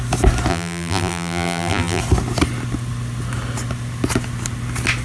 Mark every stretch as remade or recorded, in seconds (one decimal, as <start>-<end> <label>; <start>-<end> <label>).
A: 0.0-0.5 recorded; 0.5-2.0 remade; 2.0-5.0 recorded